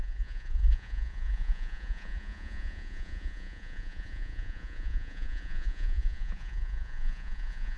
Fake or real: fake